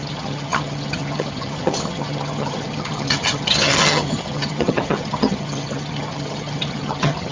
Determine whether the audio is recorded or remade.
remade